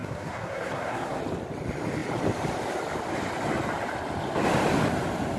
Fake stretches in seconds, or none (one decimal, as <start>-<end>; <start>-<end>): 0.0-1.2